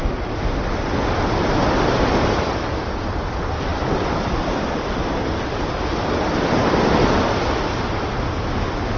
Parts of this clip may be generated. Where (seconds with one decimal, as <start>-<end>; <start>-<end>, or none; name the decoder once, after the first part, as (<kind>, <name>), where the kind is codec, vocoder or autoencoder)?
3.7-6.9 (vocoder, BigVGAN v2)